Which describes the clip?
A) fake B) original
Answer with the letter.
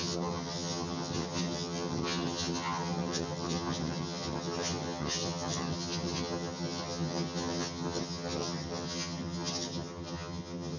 A